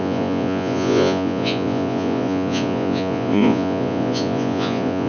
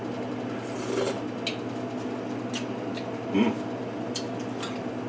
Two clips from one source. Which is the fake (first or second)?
first